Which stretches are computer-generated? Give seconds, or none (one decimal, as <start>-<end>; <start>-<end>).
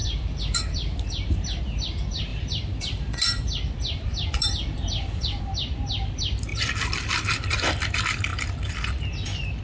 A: 0.0-1.6; 2.3-5.4; 6.5-7.9; 8.3-9.0